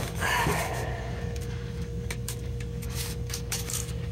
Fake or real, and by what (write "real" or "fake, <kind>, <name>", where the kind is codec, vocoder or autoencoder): fake, codec, DAC